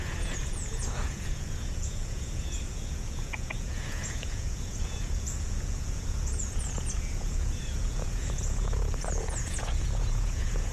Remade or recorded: remade